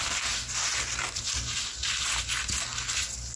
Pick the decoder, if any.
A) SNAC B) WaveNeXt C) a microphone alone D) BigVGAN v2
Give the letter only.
C